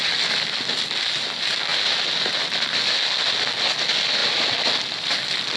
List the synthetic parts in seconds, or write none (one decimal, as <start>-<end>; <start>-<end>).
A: none